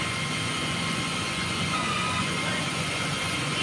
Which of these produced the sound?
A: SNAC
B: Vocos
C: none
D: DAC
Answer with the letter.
B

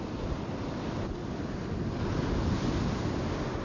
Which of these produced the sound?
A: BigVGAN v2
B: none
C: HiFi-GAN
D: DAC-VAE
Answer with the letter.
B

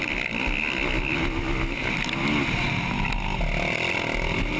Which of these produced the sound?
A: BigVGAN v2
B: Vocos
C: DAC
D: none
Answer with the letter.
D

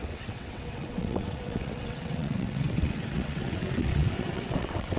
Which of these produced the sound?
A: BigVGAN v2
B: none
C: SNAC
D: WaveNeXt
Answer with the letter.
D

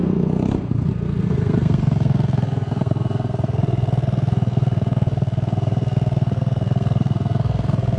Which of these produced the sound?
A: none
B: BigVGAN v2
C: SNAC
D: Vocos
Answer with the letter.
C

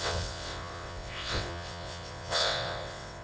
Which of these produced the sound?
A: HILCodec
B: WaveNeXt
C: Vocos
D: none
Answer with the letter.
B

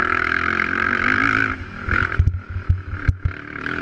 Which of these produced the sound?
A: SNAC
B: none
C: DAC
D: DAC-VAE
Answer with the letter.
D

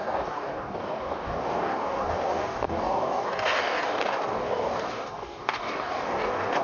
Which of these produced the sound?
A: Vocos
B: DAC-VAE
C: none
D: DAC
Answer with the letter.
D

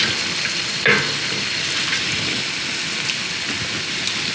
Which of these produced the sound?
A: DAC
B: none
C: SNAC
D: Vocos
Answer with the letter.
B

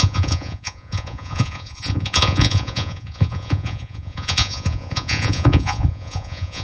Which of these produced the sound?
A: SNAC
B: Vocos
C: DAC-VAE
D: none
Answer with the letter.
B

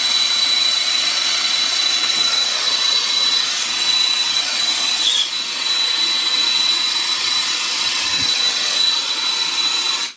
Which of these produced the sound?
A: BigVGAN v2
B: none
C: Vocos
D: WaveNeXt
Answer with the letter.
D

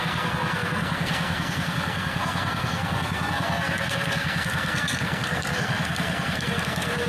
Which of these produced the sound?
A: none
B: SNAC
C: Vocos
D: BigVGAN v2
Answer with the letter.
B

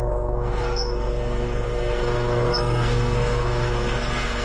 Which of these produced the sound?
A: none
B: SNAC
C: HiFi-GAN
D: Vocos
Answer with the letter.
B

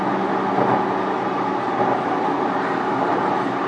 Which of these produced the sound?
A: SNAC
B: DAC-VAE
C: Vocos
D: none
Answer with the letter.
D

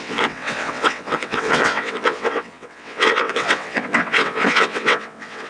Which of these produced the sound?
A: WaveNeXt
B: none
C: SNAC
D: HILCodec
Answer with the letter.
A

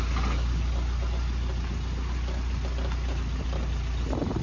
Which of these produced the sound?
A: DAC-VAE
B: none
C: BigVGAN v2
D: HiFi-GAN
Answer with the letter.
B